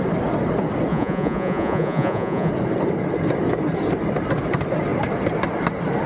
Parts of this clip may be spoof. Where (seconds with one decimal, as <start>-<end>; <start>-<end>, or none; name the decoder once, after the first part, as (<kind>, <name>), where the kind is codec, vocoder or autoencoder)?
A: 0.9-2.5 (vocoder, Vocos)